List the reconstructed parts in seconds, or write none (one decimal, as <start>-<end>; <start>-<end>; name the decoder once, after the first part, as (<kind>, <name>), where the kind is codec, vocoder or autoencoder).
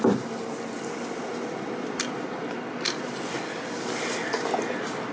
none